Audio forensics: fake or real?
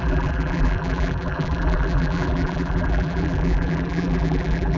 fake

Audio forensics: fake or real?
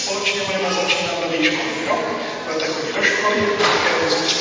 real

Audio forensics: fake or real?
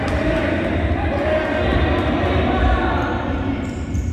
real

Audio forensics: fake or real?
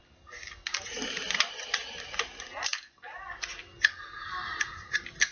fake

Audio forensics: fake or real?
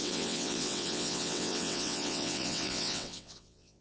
fake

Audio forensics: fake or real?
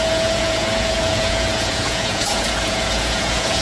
fake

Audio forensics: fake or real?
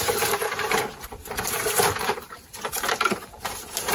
fake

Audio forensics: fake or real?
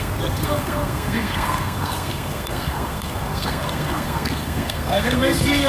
fake